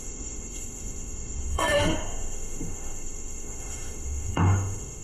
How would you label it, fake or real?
fake